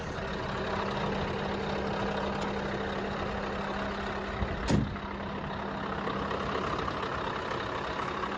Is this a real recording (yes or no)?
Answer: yes